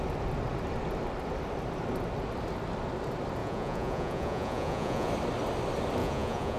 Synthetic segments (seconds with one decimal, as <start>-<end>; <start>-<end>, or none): 3.4-5.1; 6.0-6.6